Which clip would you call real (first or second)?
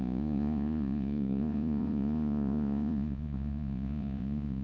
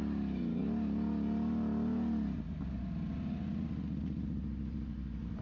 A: second